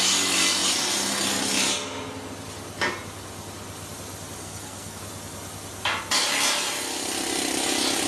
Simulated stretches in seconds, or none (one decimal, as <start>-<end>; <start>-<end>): 4.4-5.0